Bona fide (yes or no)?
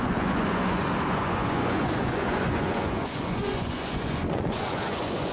no